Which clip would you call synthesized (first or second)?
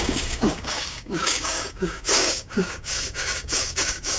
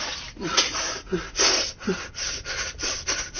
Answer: first